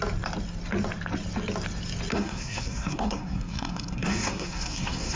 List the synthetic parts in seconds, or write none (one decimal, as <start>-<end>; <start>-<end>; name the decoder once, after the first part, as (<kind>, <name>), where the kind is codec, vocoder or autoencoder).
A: 2.1-5.2 (codec, SNAC)